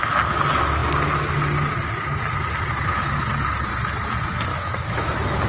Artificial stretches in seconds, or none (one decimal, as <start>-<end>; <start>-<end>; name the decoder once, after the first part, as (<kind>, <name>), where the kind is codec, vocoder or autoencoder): 4.5-5.5 (autoencoder, DAC-VAE)